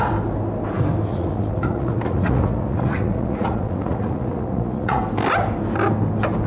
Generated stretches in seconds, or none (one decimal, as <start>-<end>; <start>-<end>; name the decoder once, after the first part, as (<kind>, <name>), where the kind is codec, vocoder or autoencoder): 1.1-5.0 (vocoder, Vocos)